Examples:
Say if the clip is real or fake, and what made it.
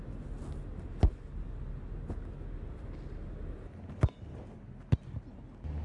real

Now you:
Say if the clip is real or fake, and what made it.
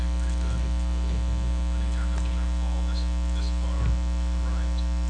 real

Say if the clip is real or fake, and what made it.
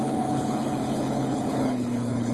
fake, codec, HILCodec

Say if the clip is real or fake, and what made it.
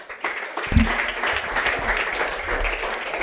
real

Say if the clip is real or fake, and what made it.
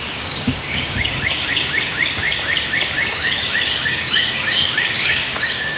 fake, codec, DAC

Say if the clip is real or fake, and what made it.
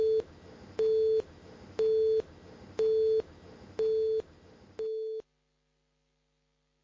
real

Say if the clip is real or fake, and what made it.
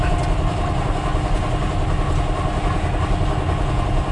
real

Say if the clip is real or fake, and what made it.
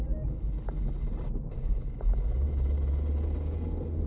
real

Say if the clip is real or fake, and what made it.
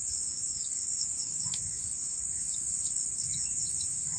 fake, codec, DAC